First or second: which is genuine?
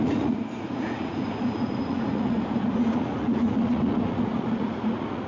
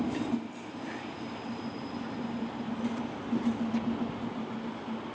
second